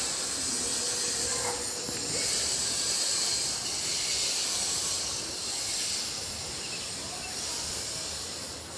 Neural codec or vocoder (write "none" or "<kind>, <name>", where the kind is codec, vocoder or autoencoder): none